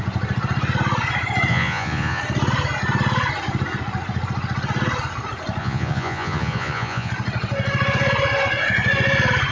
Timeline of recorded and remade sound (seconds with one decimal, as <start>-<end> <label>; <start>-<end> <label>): 0.0-1.5 recorded; 1.5-2.2 remade; 2.2-5.6 recorded; 5.6-7.1 remade; 7.1-9.5 recorded